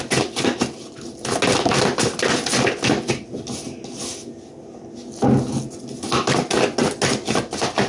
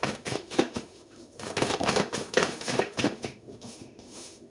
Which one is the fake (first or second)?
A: second